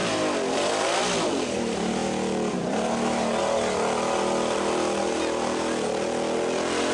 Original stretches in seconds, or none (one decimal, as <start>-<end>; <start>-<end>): 0.0-6.9